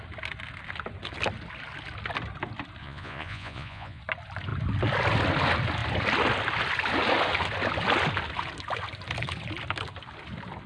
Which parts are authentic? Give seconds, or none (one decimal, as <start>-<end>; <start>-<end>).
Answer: 0.0-2.8; 4.0-10.7